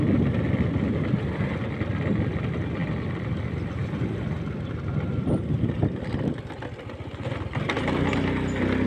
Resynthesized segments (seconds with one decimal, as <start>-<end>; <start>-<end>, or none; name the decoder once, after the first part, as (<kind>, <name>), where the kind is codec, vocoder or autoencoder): none